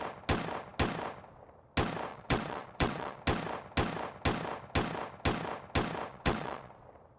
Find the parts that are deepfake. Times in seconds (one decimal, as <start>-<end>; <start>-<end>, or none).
2.1-3.2; 6.1-6.8